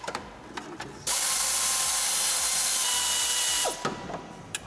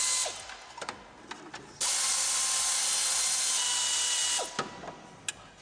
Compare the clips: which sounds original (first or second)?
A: second